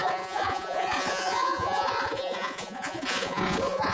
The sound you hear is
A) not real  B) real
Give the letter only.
A